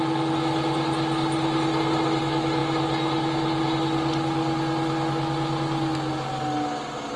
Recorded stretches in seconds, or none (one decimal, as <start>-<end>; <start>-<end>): 0.0-7.2